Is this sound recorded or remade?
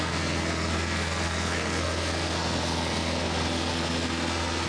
remade